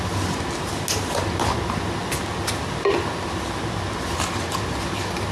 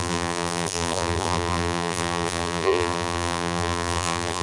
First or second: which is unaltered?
first